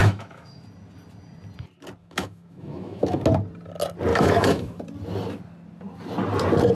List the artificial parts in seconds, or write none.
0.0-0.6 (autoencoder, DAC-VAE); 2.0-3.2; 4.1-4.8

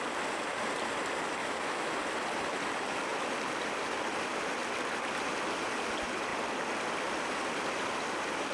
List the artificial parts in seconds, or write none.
1.4-1.9 (autoencoder, DAC-VAE)